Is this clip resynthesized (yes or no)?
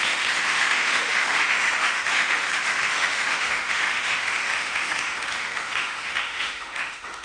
yes